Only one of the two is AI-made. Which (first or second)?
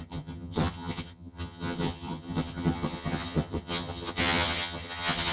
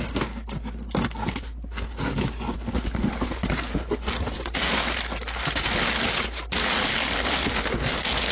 first